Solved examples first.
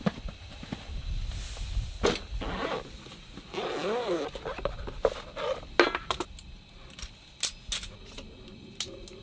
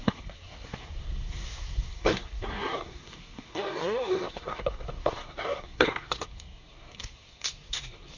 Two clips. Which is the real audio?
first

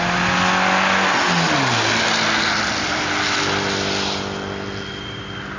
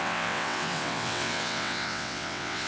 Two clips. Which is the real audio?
first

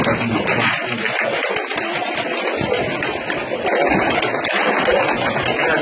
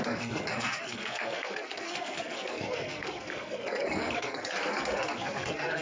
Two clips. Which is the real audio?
first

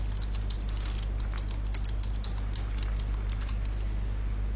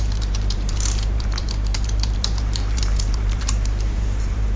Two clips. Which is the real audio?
first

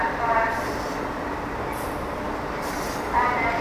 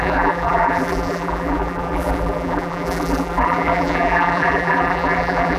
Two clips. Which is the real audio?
first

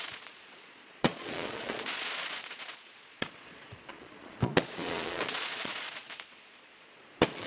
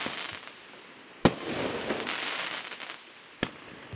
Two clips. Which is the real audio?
second